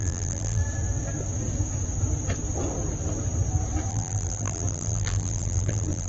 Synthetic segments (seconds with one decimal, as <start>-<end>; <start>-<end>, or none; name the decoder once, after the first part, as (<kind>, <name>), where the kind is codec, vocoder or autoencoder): 0.0-0.6 (vocoder, BigVGAN v2); 3.9-6.1